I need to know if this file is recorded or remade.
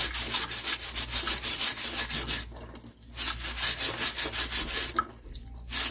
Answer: recorded